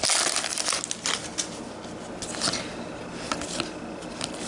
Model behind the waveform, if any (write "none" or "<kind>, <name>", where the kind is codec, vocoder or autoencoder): none